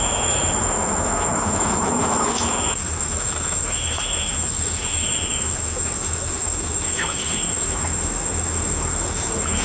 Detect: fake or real fake